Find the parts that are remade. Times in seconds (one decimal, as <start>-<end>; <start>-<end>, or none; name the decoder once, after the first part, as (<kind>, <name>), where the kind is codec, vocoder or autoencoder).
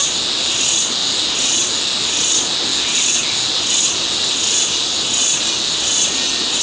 none